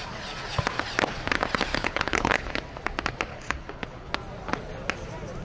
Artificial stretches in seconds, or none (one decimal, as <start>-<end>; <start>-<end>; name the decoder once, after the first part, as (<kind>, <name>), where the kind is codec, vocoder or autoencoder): 1.7-2.5 (codec, HILCodec); 3.3-4.1

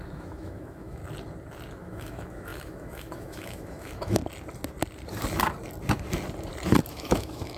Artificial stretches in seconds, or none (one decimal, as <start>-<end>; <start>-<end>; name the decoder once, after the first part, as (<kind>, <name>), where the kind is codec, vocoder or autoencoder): 0.0-1.0 (autoencoder, DAC-VAE); 1.8-4.2; 6.9-7.6

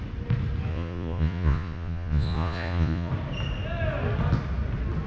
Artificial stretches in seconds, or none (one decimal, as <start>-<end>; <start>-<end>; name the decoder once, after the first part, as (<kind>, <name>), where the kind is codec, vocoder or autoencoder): 0.7-3.1 (vocoder, Vocos)

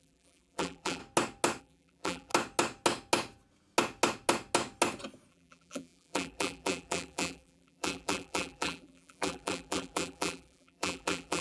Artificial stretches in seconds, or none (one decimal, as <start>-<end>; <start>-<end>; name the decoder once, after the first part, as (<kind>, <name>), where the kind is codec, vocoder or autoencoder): 0.0-1.0 (vocoder, BigVGAN v2); 1.6-2.3; 5.3-11.4

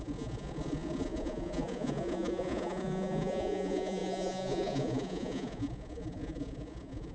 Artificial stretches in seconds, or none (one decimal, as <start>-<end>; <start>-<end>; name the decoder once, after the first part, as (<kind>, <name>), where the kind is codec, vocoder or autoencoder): 0.0-7.1 (vocoder, Vocos)

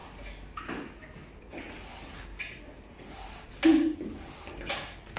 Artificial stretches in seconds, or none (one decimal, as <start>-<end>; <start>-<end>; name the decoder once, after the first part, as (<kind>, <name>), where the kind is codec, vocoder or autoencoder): none

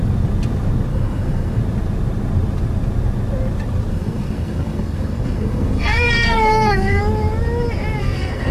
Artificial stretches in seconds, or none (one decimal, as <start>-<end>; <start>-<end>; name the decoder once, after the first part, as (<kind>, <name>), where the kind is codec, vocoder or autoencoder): 0.9-1.6 (codec, SNAC); 3.9-7.0; 8.0-8.5